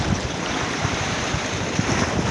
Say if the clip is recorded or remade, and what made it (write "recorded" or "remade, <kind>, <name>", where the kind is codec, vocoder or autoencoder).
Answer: remade, vocoder, BigVGAN v2